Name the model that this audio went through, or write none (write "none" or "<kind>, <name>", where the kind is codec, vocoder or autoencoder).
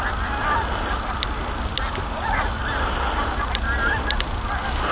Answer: none